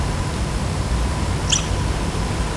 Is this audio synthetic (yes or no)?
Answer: no